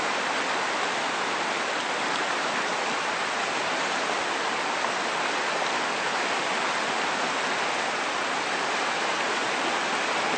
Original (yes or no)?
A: yes